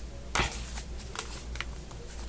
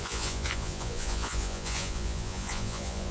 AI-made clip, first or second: second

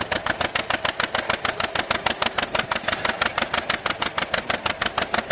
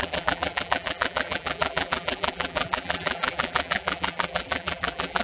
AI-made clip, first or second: second